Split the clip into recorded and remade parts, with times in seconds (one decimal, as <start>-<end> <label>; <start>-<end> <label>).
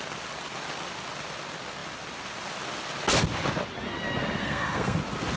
0.0-4.4 recorded; 4.4-5.0 remade; 5.0-5.4 recorded